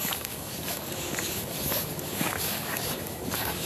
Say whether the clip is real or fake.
fake